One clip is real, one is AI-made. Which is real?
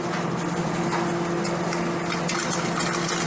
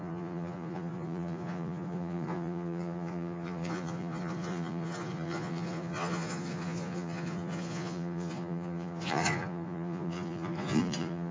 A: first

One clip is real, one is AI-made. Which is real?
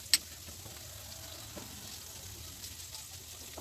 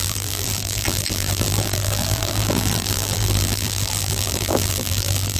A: first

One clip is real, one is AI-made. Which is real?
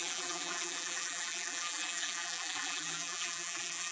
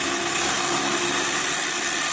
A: second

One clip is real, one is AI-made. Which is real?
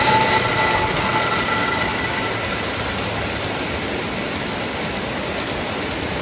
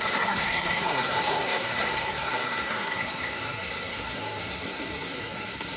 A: first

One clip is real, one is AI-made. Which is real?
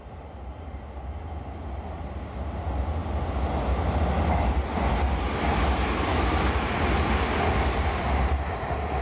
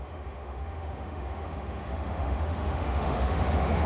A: first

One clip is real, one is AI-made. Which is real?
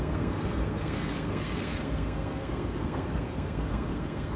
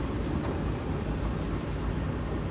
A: second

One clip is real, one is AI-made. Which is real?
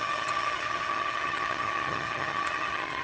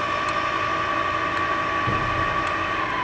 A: second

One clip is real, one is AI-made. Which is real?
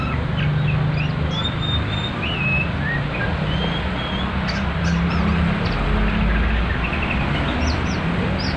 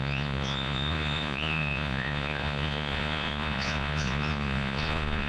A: first